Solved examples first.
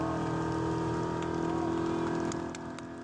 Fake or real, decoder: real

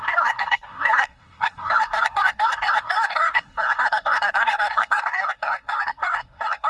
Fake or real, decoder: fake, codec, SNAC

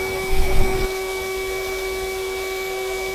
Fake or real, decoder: fake, codec, SNAC